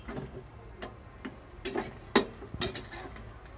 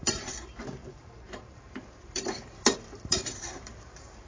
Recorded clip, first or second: first